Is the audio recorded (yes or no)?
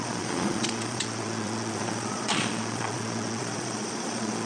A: no